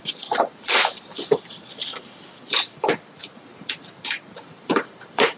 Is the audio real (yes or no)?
no